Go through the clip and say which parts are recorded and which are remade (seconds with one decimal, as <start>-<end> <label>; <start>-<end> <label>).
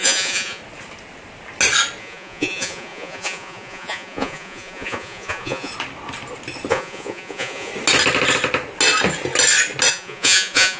0.0-0.6 remade; 0.6-2.0 recorded; 2.0-5.7 remade; 5.7-6.7 recorded; 6.7-7.7 remade; 7.7-9.9 recorded; 9.9-10.8 remade